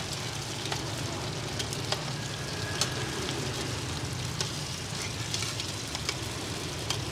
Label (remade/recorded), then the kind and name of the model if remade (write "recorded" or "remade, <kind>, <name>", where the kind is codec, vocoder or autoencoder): recorded